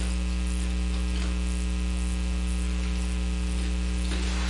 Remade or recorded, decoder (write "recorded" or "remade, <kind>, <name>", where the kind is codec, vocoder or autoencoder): recorded